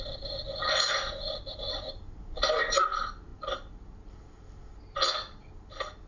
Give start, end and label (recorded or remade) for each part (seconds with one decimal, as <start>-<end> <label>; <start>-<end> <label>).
0.0-6.1 recorded